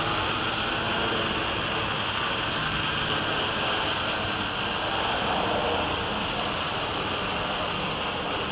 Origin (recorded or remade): recorded